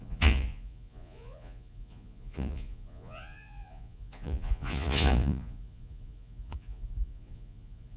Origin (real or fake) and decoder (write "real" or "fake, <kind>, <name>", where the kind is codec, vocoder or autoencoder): fake, vocoder, Vocos